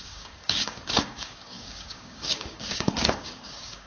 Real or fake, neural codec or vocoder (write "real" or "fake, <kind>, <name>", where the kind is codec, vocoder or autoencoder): fake, codec, DAC